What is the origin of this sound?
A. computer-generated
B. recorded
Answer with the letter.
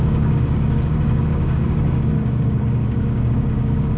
A